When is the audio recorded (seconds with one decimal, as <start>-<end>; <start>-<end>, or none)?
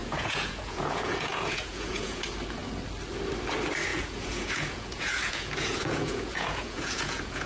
2.2-3.9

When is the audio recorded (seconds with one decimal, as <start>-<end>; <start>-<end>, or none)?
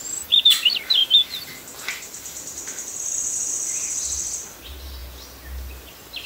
0.0-6.3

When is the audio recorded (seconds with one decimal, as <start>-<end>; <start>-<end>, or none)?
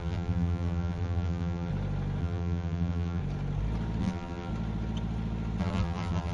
1.7-2.2; 3.2-4.0; 4.5-5.6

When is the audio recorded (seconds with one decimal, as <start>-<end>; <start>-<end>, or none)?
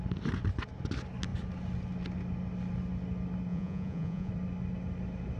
0.0-3.5; 4.3-5.4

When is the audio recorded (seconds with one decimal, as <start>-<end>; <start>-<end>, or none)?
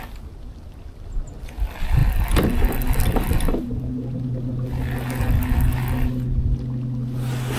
0.0-7.6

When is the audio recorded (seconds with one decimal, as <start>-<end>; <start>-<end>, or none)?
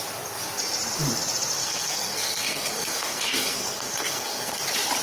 0.0-1.6; 4.6-5.0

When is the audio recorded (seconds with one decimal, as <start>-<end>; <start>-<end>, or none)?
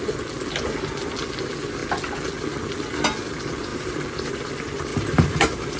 0.0-3.7; 4.3-4.9